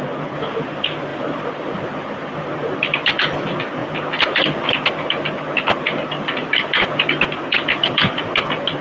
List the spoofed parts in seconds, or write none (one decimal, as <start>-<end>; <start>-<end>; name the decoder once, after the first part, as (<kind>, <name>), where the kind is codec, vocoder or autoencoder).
1.1-1.8 (vocoder, BigVGAN v2)